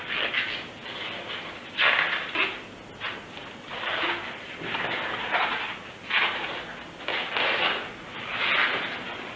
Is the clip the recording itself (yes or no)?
yes